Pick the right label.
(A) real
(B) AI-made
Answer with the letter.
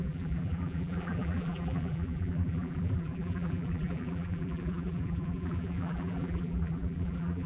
B